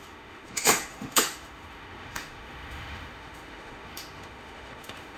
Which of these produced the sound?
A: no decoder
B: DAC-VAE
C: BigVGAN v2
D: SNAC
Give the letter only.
B